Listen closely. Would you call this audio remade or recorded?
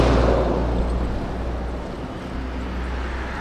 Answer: recorded